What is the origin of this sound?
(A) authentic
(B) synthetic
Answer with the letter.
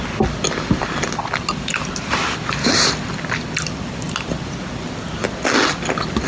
A